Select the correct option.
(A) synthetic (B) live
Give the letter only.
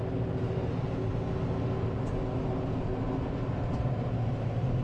B